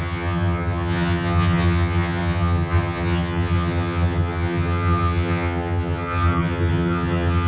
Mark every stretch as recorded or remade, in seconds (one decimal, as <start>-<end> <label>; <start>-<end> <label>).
0.0-7.5 remade